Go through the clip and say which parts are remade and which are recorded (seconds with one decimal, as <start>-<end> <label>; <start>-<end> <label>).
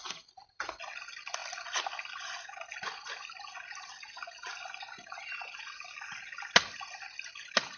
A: 0.0-7.8 recorded